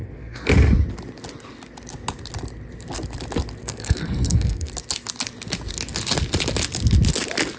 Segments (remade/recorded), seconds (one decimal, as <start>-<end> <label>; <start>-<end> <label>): 0.0-0.5 remade; 0.5-3.6 recorded; 3.6-4.7 remade; 4.7-7.6 recorded